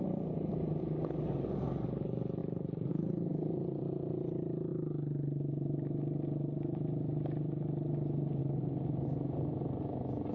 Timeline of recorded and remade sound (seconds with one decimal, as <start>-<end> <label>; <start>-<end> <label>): 0.0-10.3 recorded